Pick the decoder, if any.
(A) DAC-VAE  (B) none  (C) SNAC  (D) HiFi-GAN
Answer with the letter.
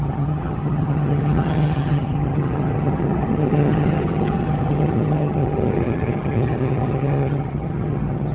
D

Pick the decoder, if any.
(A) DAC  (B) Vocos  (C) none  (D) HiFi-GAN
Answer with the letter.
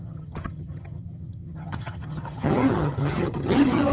D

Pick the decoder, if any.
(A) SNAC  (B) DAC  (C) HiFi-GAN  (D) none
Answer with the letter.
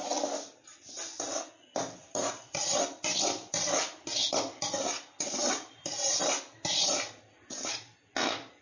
D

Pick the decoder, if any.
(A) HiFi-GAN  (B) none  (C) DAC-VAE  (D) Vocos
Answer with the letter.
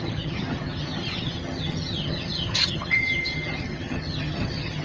A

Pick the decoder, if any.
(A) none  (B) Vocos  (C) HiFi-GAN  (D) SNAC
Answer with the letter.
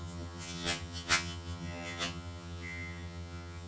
C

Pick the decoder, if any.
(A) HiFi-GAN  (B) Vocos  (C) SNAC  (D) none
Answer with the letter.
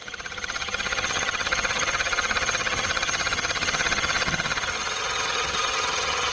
A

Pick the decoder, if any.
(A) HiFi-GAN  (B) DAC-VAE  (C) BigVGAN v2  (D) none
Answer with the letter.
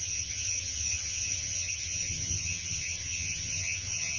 A